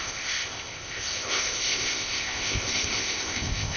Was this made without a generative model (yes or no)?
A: no